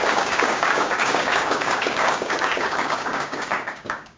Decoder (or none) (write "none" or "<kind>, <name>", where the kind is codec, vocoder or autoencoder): codec, DAC